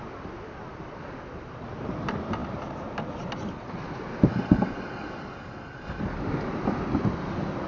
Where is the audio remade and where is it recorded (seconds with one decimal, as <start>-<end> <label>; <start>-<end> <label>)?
0.0-4.3 recorded; 4.3-6.0 remade; 6.0-7.7 recorded